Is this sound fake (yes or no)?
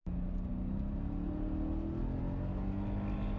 no